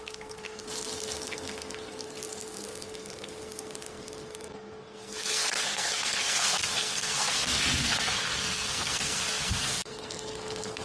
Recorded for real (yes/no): no